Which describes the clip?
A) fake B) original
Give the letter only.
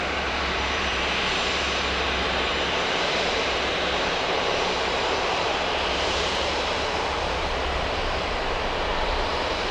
A